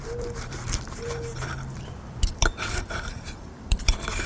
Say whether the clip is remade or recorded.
remade